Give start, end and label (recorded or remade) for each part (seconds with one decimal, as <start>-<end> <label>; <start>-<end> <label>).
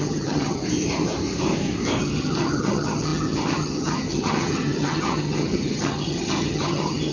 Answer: 0.0-0.6 remade; 0.6-2.0 recorded; 2.0-7.1 remade